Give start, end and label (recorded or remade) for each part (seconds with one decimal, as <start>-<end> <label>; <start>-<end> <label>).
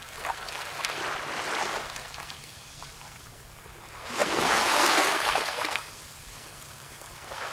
0.0-1.0 remade; 1.0-1.6 recorded; 1.6-7.5 remade